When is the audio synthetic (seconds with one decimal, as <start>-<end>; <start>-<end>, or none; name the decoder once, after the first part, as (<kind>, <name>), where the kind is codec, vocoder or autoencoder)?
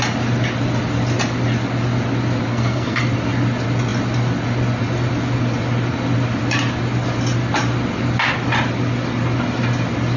2.5-3.0 (codec, SNAC)